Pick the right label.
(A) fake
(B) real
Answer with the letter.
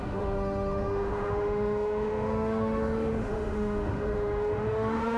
A